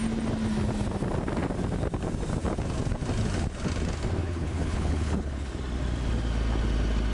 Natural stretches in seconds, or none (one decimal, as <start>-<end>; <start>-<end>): 0.0-4.2; 5.5-7.1